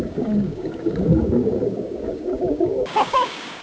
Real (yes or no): no